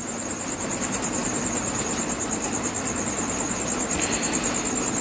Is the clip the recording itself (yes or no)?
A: no